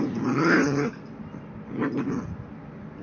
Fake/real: real